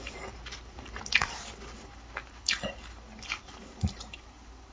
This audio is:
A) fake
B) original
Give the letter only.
B